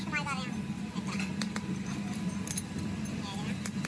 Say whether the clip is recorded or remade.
recorded